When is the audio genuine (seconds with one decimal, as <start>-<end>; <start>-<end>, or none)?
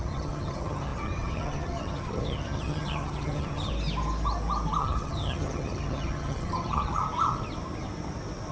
3.7-4.8; 7.0-8.5